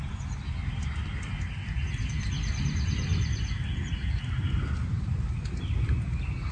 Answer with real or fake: real